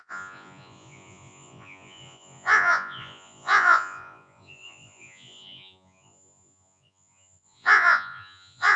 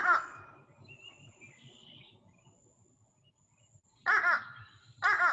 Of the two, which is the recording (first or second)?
second